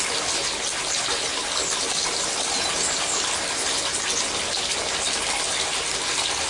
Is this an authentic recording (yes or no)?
yes